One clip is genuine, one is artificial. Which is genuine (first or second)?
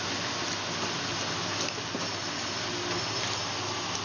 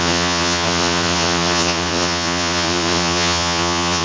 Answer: first